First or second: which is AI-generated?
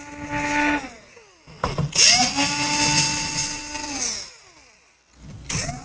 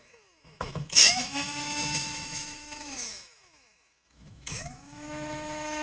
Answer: second